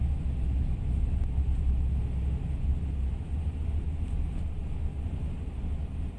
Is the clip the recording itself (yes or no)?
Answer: yes